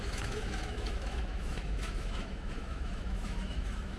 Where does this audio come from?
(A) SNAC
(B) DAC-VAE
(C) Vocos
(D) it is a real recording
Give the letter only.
B